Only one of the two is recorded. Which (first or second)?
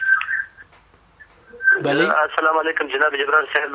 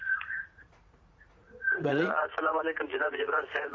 first